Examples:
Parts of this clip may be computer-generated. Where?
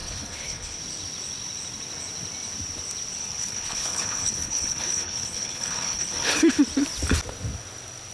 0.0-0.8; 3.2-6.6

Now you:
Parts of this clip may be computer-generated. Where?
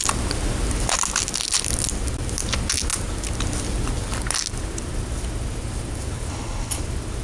6.3-6.8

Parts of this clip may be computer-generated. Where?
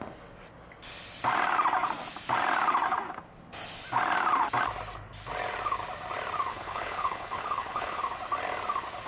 6.5-8.0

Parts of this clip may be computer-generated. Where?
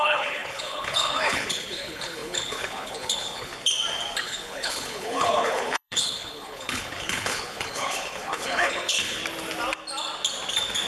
0.0-3.5; 4.2-9.2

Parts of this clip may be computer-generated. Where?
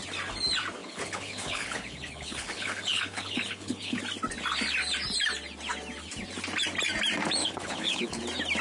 0.8-4.0; 7.4-8.2